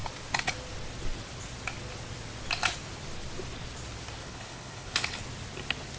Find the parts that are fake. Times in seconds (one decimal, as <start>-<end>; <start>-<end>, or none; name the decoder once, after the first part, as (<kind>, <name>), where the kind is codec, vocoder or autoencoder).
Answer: 4.2-5.2 (codec, HILCodec)